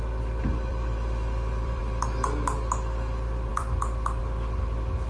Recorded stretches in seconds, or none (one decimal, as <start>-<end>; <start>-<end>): 0.0-0.7; 1.8-3.5; 4.2-5.1